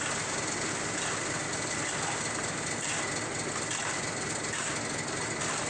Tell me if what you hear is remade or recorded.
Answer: recorded